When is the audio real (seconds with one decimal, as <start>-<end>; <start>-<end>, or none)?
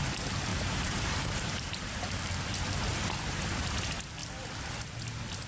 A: 0.0-0.5; 2.4-5.5